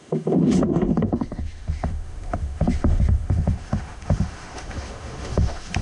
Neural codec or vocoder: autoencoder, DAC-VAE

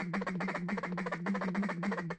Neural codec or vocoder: autoencoder, DAC-VAE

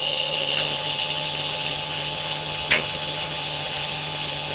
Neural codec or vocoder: vocoder, HiFi-GAN